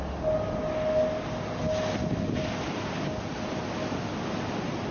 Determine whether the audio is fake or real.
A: real